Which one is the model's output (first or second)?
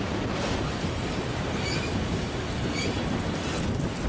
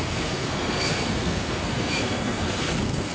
second